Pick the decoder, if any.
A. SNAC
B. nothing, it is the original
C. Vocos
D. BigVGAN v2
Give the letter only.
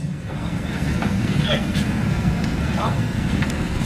A